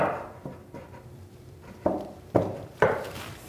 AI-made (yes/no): yes